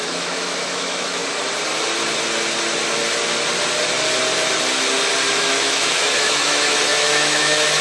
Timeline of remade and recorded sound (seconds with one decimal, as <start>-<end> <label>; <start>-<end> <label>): 0.0-1.2 remade; 1.2-5.3 recorded; 5.3-7.8 remade